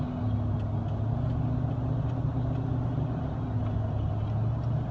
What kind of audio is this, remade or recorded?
recorded